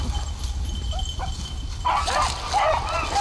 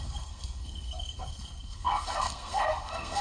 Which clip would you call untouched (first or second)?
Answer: first